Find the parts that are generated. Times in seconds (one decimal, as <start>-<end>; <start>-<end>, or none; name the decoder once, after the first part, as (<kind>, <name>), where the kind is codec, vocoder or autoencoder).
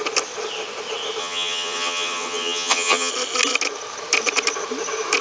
1.2-3.1 (vocoder, HiFi-GAN)